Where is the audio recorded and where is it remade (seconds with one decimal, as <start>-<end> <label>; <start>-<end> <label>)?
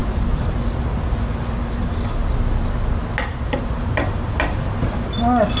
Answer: 0.0-0.5 remade; 0.5-5.6 recorded